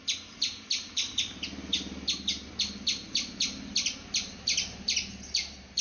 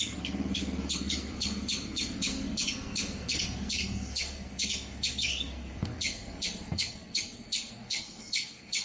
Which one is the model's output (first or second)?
second